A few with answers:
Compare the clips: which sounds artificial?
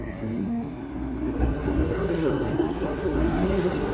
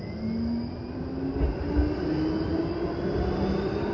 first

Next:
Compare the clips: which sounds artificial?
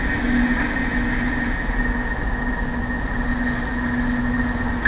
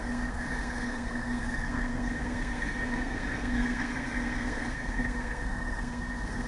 second